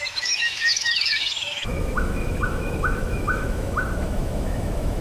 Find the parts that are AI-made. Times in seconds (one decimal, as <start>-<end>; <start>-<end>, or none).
0.0-5.0